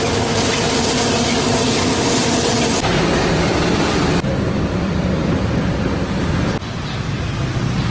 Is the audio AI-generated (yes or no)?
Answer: no